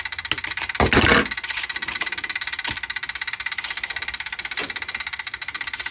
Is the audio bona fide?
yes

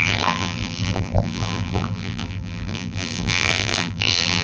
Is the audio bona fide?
no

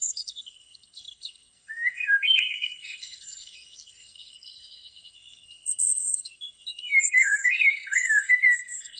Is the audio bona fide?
no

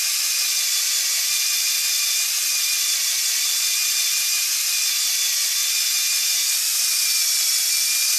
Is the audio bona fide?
yes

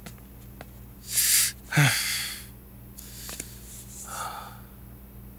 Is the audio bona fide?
yes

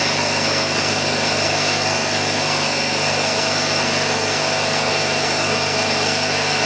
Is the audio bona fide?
no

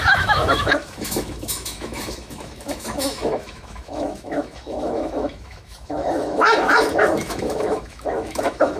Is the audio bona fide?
no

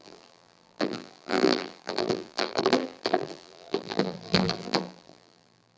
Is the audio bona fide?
no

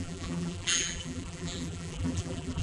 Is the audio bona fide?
no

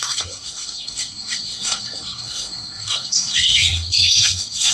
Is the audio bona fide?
no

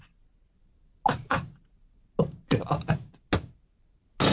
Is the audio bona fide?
yes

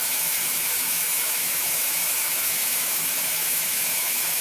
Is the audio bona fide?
no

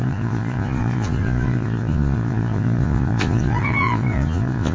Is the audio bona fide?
no